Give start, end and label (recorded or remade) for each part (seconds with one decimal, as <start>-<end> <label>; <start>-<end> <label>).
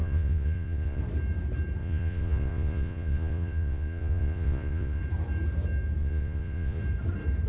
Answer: 0.0-1.0 remade; 1.0-1.8 recorded; 1.8-5.0 remade; 5.0-6.0 recorded; 6.0-6.8 remade; 6.8-7.5 recorded